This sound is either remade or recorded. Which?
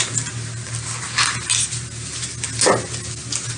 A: recorded